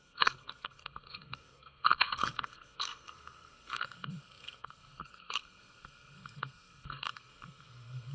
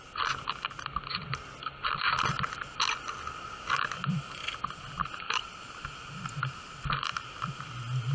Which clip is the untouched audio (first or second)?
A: second